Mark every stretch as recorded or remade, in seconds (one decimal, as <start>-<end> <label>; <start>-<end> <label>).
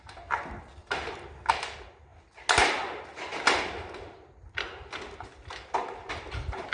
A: 0.0-6.7 recorded